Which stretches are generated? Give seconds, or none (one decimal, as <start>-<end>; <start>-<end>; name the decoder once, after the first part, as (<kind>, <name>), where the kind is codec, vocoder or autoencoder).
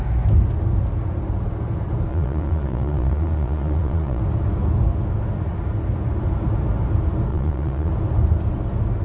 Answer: 2.1-4.2 (vocoder, Vocos); 7.3-7.9